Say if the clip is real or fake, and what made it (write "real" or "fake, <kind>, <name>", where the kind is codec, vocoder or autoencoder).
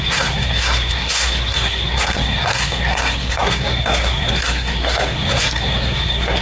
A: fake, codec, SNAC